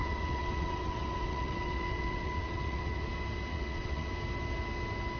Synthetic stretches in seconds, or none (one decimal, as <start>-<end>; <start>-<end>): 0.0-3.1; 3.5-4.1